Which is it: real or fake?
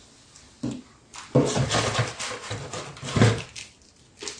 real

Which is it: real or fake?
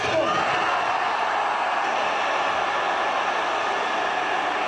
real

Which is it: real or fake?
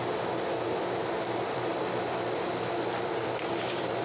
real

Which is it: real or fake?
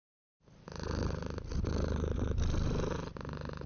real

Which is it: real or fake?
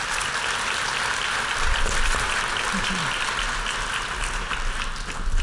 real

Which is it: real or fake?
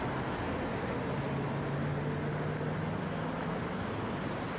real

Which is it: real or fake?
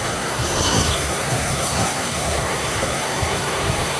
fake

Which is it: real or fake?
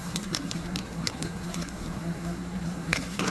fake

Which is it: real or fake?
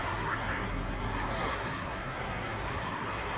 fake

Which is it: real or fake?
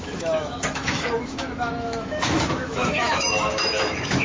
fake